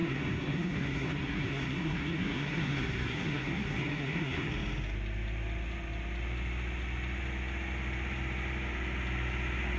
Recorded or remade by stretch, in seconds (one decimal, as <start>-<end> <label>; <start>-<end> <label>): 0.0-4.5 remade; 4.5-9.8 recorded

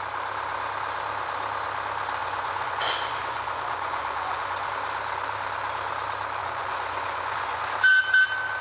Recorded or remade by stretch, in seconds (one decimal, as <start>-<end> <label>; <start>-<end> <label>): 0.0-2.2 recorded; 2.2-4.7 remade; 4.7-6.4 recorded; 6.4-7.6 remade; 7.6-8.6 recorded

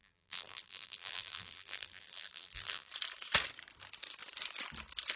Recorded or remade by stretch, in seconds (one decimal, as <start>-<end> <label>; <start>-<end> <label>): 0.0-2.9 remade; 2.9-5.2 recorded

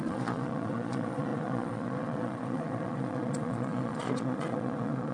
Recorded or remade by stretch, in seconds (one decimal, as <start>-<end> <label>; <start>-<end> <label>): 0.0-5.1 remade

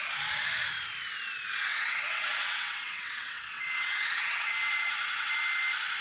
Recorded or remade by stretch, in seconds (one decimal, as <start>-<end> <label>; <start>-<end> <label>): 0.0-1.7 recorded; 1.7-5.3 remade; 5.3-6.0 recorded

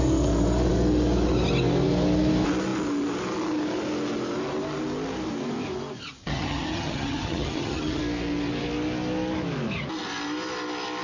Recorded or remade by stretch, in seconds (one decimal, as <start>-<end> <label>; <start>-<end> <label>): 0.0-6.2 recorded; 6.2-8.0 remade; 8.0-11.0 recorded

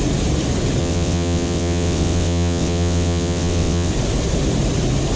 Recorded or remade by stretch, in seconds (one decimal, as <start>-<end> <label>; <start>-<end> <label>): 0.0-0.8 recorded; 0.8-3.9 remade; 3.9-5.2 recorded

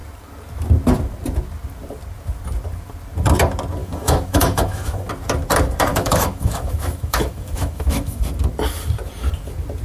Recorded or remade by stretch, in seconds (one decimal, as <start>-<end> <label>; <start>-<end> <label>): 0.0-3.8 recorded; 3.8-5.1 remade; 5.1-5.9 recorded; 5.9-8.2 remade; 8.2-9.8 recorded